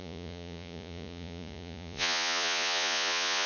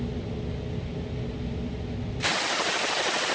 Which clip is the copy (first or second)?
first